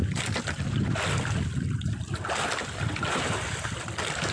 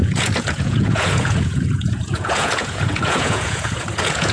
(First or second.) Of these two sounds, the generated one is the second